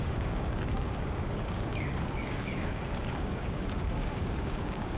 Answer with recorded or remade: remade